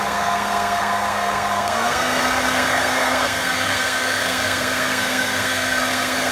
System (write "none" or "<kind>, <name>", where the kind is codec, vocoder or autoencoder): codec, SNAC